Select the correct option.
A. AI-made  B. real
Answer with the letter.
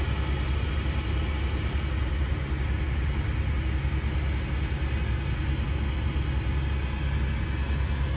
B